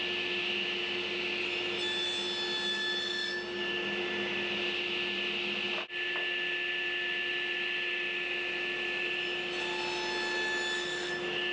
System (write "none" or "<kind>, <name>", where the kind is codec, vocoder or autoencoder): none